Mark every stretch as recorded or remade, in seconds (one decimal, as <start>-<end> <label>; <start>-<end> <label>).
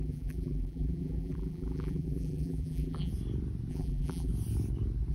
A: 0.0-3.1 remade; 3.1-3.7 recorded; 3.7-4.3 remade; 4.3-5.1 recorded